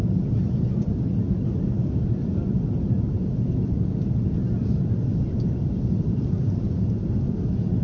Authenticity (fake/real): real